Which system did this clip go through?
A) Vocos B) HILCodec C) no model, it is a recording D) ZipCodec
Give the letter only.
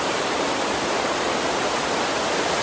C